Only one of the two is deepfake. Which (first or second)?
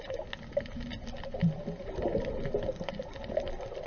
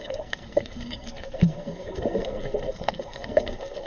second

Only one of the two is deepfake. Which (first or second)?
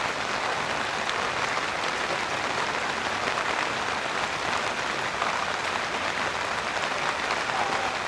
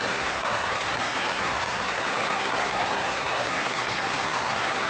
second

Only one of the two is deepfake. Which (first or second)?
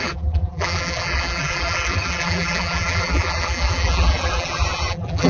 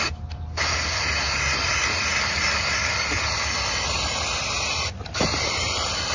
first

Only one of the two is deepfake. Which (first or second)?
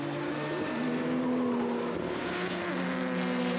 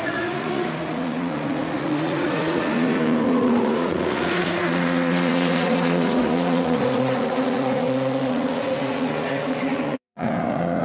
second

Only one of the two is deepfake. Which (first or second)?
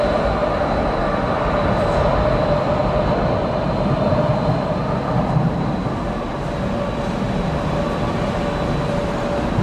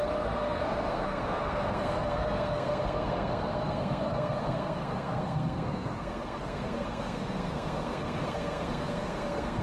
second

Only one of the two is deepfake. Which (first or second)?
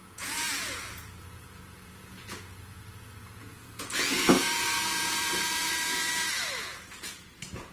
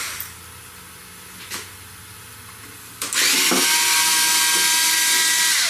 first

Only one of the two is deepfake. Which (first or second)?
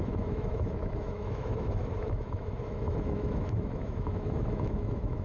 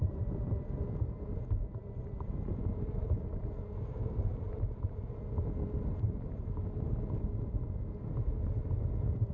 first